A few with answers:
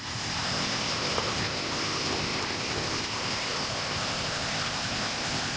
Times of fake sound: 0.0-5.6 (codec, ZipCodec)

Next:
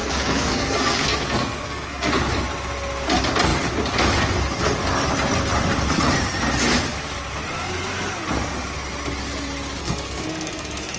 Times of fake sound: 0.0-2.1 (codec, SNAC); 9.8-11.0

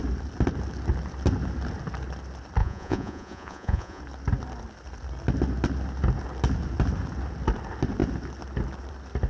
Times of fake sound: 2.6-4.0 (vocoder, Vocos)

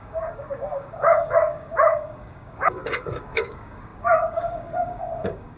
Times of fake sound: 0.0-5.6 (codec, DAC)

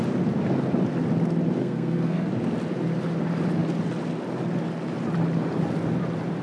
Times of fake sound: 1.6-2.3 (codec, SNAC)